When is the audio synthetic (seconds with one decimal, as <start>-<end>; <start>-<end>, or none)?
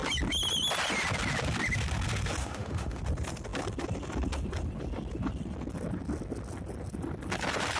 2.4-3.0